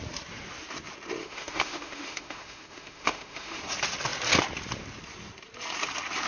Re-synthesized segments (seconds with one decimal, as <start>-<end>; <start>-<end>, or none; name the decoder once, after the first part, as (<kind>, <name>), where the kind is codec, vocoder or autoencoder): 1.2-3.6 (autoencoder, DAC-VAE)